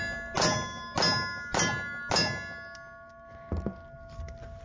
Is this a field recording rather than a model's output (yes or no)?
yes